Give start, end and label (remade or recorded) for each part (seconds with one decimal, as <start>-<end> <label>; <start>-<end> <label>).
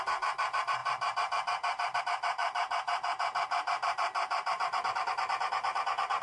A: 0.0-6.2 remade